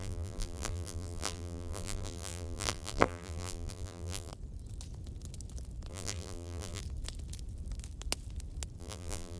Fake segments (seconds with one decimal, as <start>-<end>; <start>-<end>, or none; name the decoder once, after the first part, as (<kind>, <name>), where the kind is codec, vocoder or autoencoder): 0.0-4.3 (vocoder, BigVGAN v2); 5.9-6.8; 8.8-9.4